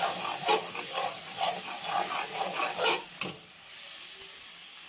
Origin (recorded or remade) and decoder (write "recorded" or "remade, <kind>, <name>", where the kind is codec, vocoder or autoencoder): recorded